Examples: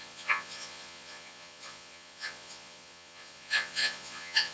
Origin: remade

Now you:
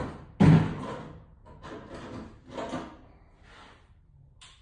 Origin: recorded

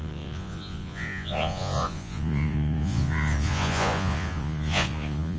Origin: remade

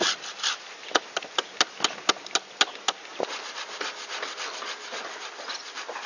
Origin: recorded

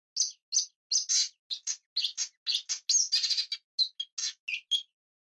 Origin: recorded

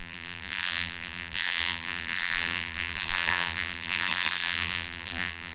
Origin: remade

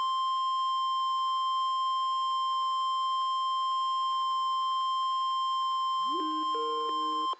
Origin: recorded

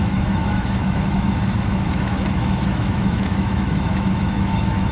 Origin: remade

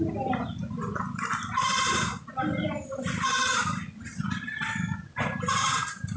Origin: recorded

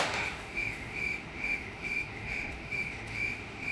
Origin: remade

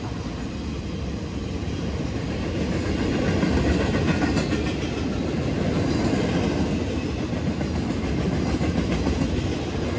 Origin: recorded